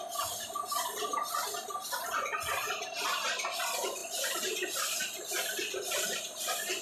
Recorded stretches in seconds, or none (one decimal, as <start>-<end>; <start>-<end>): none